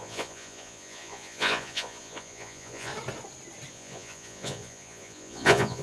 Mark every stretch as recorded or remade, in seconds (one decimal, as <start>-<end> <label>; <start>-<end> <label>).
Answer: 0.0-2.9 remade; 2.9-3.7 recorded; 3.7-5.8 remade